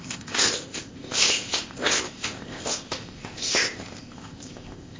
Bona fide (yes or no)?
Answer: no